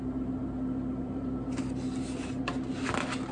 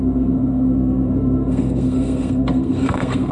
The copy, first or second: second